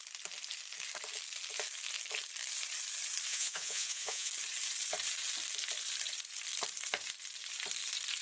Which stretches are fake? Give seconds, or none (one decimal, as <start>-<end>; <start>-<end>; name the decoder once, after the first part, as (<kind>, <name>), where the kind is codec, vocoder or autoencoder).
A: 3.3-4.3 (vocoder, Vocos)

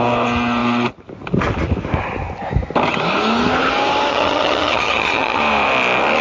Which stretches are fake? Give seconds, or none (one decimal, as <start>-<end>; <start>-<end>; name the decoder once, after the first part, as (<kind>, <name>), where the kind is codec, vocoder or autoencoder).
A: 4.1-5.4 (vocoder, HiFi-GAN)

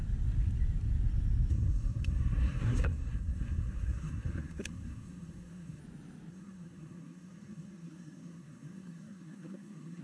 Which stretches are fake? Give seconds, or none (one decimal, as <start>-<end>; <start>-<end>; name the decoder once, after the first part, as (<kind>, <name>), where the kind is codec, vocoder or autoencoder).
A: 1.5-5.8 (codec, SNAC); 6.3-10.0

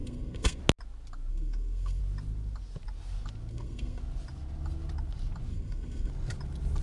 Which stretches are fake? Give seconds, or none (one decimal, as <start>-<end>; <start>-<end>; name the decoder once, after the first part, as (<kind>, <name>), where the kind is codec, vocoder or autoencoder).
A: 0.0-0.6 (codec, SNAC); 1.3-2.0; 3.5-4.0; 5.5-6.1

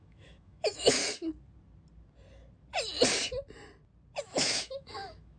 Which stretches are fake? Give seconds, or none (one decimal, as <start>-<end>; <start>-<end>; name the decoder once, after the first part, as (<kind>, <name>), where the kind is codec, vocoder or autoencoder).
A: 0.0-1.0 (autoencoder, DAC-VAE); 4.2-5.4

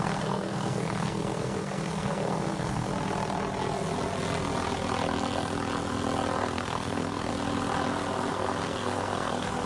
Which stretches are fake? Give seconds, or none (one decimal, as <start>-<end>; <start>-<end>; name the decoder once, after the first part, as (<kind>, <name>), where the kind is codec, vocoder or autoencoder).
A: 0.0-2.9 (codec, SNAC); 6.4-7.3; 8.3-9.7

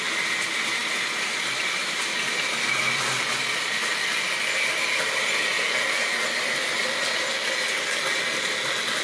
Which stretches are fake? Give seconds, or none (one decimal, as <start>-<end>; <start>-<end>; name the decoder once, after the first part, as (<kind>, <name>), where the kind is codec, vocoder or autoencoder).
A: none

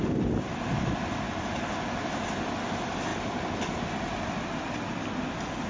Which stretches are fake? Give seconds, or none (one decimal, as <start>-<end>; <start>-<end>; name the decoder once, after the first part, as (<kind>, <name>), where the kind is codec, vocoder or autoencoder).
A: 3.1-5.3 (vocoder, BigVGAN v2)